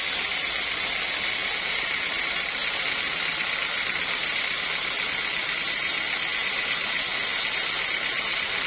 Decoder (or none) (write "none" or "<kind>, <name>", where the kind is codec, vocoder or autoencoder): none